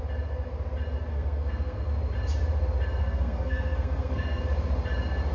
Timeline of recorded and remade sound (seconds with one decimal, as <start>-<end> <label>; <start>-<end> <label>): 0.0-1.1 recorded; 1.1-1.9 remade; 1.9-3.0 recorded; 3.0-4.4 remade; 4.4-5.3 recorded